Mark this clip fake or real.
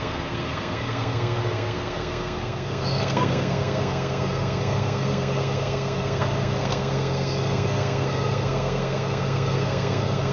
fake